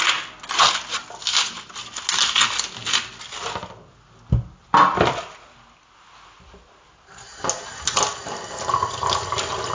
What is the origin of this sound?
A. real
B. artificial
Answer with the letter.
A